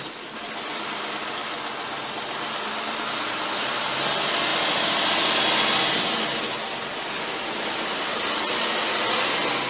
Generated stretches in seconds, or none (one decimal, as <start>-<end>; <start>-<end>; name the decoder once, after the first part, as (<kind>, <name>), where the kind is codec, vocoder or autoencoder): none